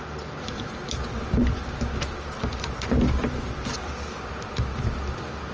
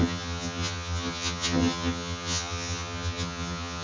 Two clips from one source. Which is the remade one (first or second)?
second